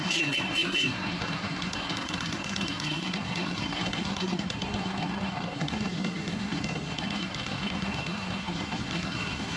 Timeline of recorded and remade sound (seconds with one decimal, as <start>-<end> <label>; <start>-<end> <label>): 0.0-9.6 remade